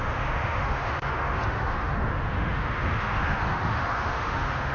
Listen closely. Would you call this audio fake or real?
fake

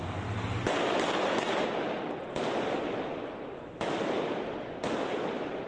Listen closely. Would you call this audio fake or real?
real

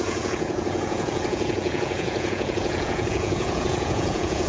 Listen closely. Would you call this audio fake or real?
fake